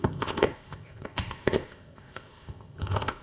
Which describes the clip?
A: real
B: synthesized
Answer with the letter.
B